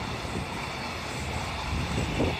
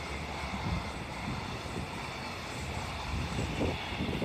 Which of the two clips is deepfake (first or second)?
second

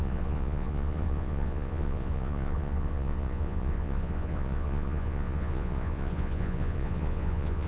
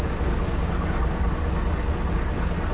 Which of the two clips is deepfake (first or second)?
first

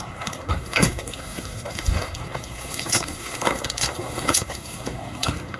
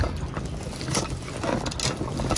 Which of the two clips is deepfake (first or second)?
first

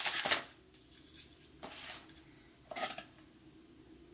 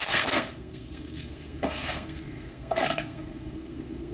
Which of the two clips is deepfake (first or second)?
second